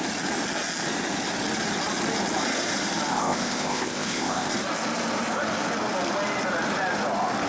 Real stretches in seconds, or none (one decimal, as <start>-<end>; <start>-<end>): 0.0-3.1; 4.5-7.5